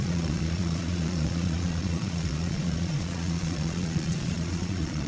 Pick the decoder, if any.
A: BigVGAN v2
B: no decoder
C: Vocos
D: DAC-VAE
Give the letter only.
C